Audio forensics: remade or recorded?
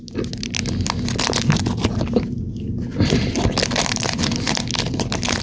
recorded